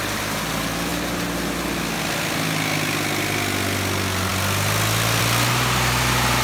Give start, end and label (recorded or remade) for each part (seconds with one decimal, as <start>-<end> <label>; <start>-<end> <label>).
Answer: 0.0-6.4 recorded